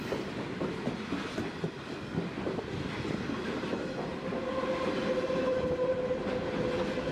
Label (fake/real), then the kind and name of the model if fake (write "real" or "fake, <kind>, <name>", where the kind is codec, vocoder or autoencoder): real